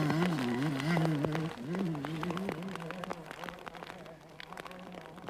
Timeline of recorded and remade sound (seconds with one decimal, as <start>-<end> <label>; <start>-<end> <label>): 0.0-5.3 recorded